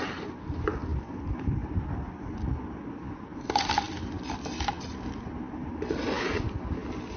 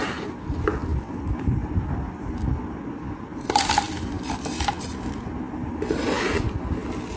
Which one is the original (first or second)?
second